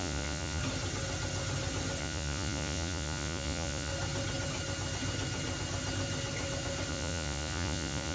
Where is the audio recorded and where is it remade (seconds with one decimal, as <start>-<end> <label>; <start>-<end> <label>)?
0.0-0.6 remade; 0.6-2.0 recorded; 2.0-3.9 remade; 3.9-6.9 recorded; 6.9-8.1 remade